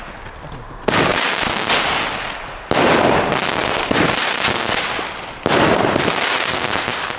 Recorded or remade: recorded